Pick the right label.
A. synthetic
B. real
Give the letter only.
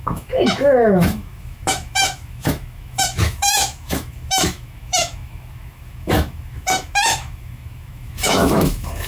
A